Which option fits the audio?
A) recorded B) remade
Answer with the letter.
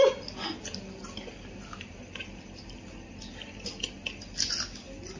A